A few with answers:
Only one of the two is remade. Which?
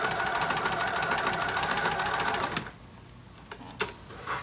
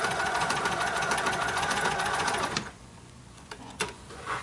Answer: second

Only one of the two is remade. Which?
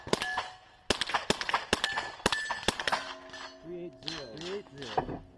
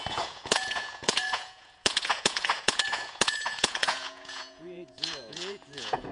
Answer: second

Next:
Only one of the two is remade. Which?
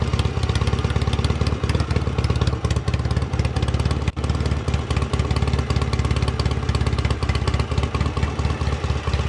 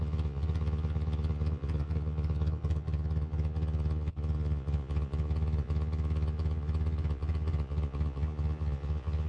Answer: second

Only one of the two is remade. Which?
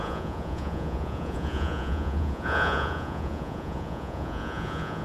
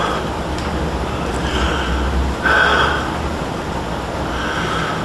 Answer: first